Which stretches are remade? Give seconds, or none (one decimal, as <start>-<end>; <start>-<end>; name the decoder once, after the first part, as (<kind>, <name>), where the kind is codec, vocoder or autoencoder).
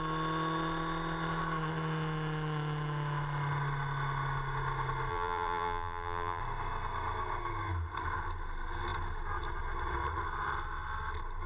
5.1-6.4 (vocoder, BigVGAN v2)